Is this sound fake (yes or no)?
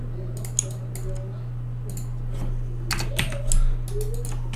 no